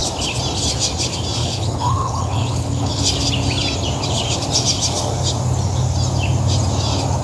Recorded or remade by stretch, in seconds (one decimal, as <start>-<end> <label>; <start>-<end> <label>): 0.0-1.4 recorded; 1.4-3.0 remade; 3.0-7.2 recorded